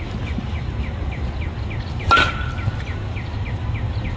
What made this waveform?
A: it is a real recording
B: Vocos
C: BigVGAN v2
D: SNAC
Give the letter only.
A